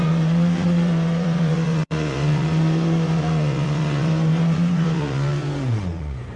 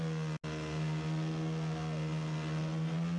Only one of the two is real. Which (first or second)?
second